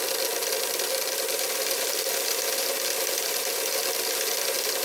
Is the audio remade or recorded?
recorded